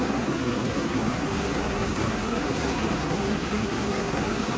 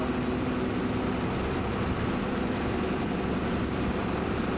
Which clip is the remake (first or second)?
first